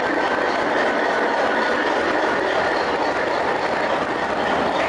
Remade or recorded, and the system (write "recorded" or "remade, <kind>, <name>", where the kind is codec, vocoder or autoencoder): recorded